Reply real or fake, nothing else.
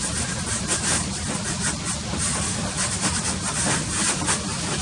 real